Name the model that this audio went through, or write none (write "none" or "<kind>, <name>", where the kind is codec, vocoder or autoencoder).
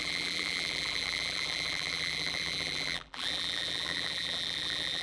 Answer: vocoder, BigVGAN v2